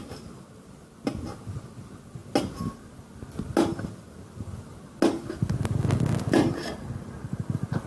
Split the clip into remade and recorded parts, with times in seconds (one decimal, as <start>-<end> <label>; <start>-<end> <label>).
0.0-7.9 recorded